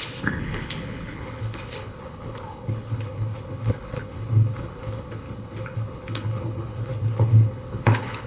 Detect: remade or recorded remade